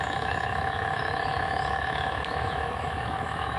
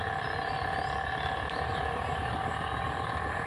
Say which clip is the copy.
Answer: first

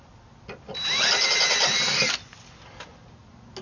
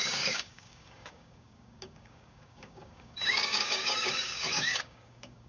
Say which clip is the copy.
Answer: second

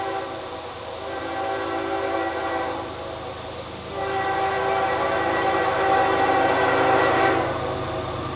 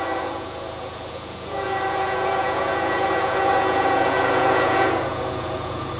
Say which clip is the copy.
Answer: second